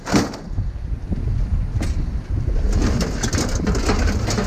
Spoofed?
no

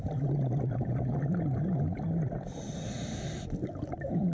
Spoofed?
no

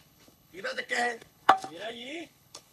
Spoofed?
yes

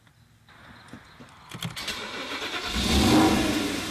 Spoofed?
no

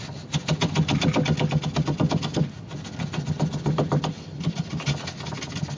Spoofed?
no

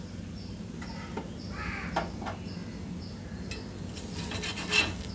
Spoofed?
no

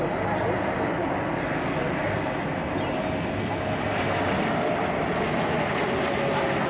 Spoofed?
no